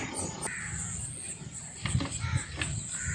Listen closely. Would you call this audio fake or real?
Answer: real